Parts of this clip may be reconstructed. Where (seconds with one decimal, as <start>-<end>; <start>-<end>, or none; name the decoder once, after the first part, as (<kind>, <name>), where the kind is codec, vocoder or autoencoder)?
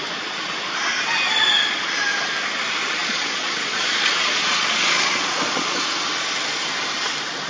3.0-5.8 (vocoder, Vocos)